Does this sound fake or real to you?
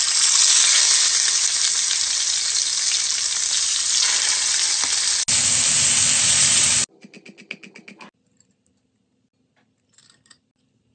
real